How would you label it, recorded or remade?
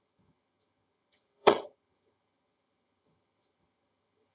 remade